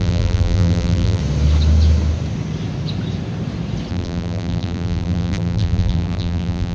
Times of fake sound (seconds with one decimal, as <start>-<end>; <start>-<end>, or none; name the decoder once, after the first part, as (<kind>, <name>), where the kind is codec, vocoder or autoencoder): 0.0-1.2 (vocoder, BigVGAN v2); 3.9-6.7